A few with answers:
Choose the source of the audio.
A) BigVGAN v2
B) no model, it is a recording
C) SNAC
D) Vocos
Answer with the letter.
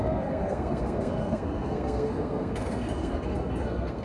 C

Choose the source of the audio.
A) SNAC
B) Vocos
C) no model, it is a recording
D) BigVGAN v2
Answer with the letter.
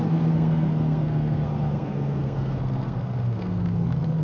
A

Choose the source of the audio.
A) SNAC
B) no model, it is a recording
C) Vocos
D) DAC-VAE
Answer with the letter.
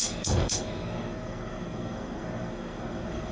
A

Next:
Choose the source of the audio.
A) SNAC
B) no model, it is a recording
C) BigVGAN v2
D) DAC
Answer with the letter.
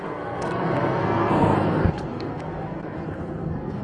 A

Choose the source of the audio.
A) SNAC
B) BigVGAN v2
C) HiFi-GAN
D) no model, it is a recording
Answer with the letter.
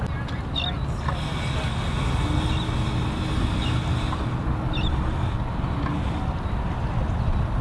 D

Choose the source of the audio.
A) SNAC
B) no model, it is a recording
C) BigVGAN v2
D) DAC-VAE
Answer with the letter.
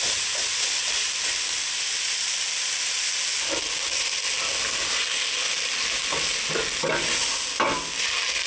B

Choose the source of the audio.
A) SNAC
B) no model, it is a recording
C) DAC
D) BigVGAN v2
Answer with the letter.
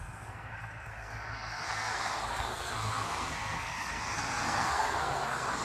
A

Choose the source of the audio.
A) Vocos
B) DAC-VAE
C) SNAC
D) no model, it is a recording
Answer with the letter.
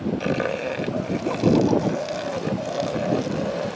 D